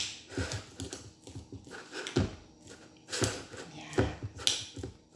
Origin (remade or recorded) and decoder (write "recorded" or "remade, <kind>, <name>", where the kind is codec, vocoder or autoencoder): recorded